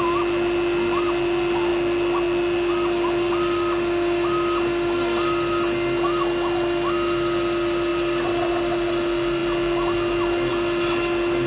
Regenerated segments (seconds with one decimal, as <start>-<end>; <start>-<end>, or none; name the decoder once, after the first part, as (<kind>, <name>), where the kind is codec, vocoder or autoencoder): none